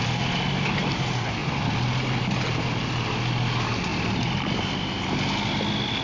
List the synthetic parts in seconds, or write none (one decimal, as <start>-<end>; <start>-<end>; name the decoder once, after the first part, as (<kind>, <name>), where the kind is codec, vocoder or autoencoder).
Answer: none